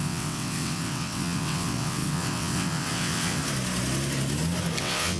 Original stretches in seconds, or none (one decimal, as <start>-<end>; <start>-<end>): 3.4-4.8